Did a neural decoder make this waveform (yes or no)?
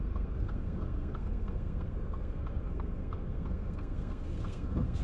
yes